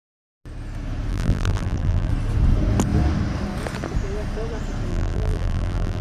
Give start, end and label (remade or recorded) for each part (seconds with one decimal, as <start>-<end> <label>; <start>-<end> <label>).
0.0-1.1 recorded; 1.1-2.1 remade; 2.1-4.9 recorded; 4.9-6.0 remade